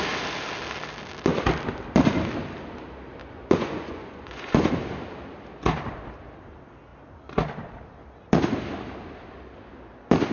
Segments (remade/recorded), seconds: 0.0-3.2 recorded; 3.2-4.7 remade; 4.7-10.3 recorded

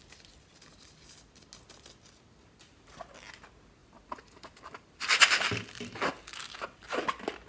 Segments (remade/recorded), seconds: 0.0-3.8 recorded; 3.8-6.3 remade; 6.3-7.5 recorded

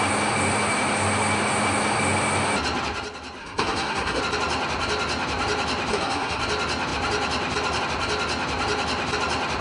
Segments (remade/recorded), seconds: 0.0-3.4 recorded; 3.4-4.2 remade; 4.2-5.9 recorded; 5.9-6.4 remade; 6.4-9.6 recorded